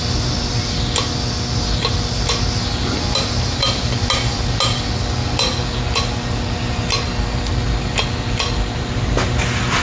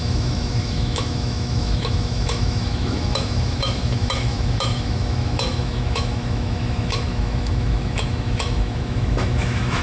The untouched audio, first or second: first